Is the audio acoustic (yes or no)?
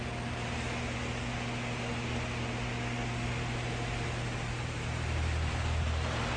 yes